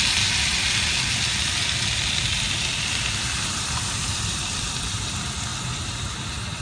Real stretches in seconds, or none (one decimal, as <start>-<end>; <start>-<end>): 0.0-1.3; 5.1-5.5; 6.1-6.6